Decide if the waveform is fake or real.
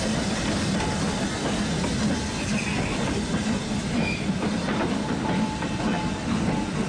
real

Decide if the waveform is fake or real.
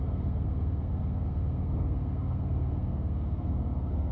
fake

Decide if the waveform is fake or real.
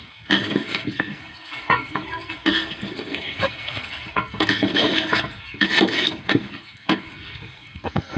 fake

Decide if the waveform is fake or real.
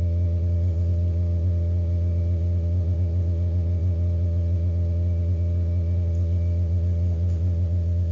fake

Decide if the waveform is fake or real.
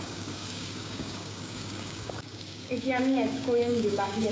fake